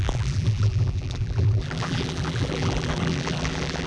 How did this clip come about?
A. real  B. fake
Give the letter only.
B